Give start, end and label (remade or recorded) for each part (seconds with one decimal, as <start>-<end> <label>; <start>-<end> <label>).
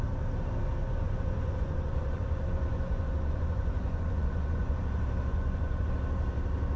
0.0-0.8 recorded; 0.8-4.8 remade; 4.8-5.3 recorded; 5.3-5.9 remade; 5.9-6.8 recorded